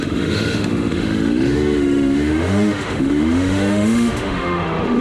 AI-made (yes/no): yes